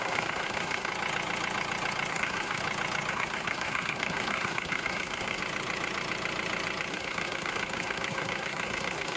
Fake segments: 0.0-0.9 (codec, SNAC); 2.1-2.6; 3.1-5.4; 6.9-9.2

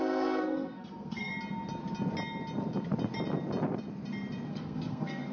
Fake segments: 0.0-1.3 (codec, SNAC); 4.5-5.3

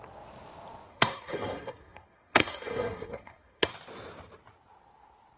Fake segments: 0.9-3.7 (codec, SNAC)

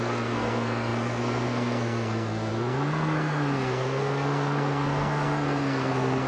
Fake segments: 0.0-6.3 (codec, SNAC)

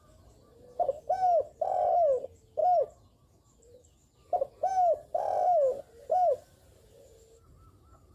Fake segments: none